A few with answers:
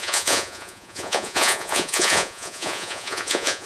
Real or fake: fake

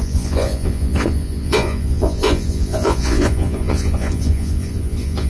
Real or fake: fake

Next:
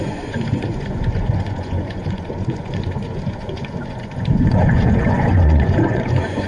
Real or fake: fake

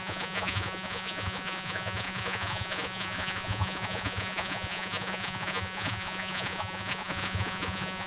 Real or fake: fake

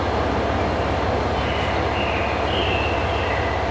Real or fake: real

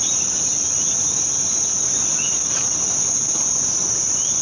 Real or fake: real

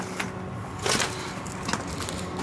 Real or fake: real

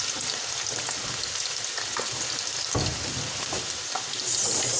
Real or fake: real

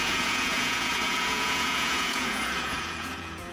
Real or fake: fake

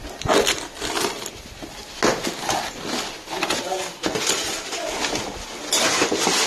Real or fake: real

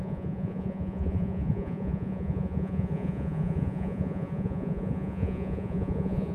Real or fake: fake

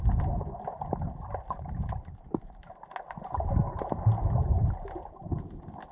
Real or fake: real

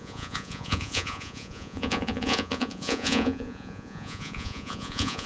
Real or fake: fake